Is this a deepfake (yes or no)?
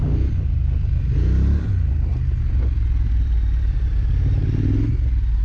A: yes